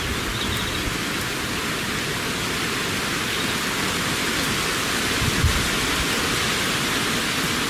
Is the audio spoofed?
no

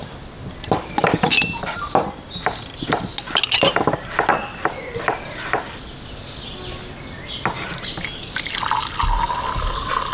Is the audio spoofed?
no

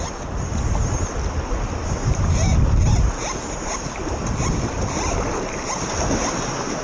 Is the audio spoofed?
no